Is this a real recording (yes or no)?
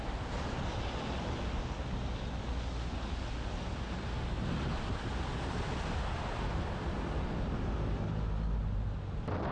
yes